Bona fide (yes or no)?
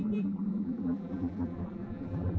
no